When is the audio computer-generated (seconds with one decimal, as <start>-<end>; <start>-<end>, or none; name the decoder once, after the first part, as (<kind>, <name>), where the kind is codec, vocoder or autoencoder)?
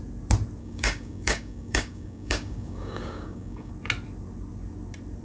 0.6-3.7 (codec, DAC)